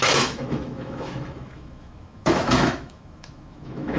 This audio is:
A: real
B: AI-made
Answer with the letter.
B